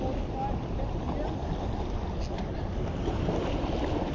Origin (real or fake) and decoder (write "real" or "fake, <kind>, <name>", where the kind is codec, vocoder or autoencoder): real